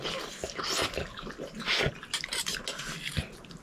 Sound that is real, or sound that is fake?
real